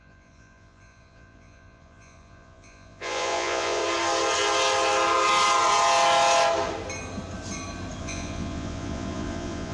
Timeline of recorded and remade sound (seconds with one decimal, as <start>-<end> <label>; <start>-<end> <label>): 0.0-3.8 remade; 3.8-8.0 recorded; 8.0-9.7 remade